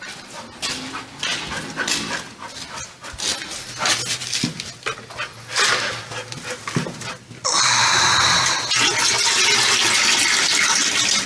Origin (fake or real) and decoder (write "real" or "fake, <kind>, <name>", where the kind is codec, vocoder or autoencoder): real